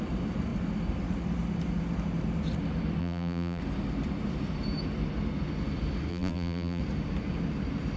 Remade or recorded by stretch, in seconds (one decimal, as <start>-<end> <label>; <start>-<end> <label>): 0.0-3.0 recorded; 3.0-3.6 remade; 3.6-6.1 recorded; 6.1-6.8 remade; 6.8-8.0 recorded

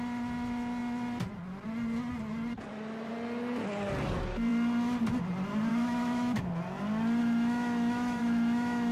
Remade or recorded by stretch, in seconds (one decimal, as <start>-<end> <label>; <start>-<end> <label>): 0.0-5.7 recorded; 5.7-6.4 remade; 6.4-7.2 recorded; 7.2-8.9 remade

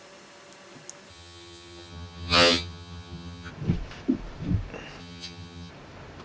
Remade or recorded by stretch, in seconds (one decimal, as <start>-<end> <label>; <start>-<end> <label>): 0.0-1.1 recorded; 1.1-3.5 remade; 3.5-5.0 recorded; 5.0-5.7 remade; 5.7-6.2 recorded

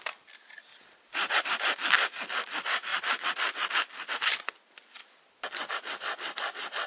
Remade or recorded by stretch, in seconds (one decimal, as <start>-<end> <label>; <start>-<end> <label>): 0.0-0.7 recorded; 0.7-1.4 remade; 1.4-5.0 recorded; 5.0-5.7 remade; 5.7-6.9 recorded

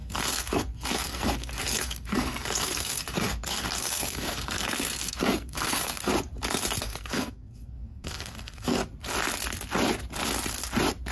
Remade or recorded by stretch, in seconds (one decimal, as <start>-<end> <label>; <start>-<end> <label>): 0.0-6.1 remade; 6.1-6.8 recorded; 6.8-8.8 remade; 8.8-11.1 recorded